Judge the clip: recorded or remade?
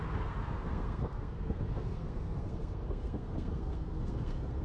remade